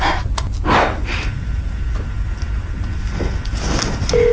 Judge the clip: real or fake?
real